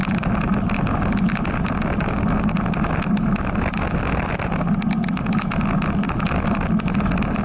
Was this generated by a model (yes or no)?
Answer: no